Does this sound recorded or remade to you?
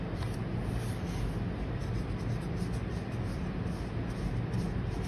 recorded